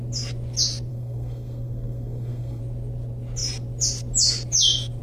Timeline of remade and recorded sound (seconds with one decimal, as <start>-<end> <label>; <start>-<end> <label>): 0.0-0.9 recorded; 0.9-2.6 remade; 2.6-5.0 recorded